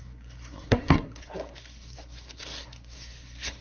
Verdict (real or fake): fake